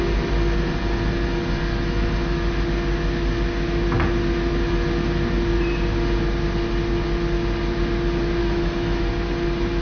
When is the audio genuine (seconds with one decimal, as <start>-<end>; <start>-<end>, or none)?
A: 0.0-8.4; 9.0-9.8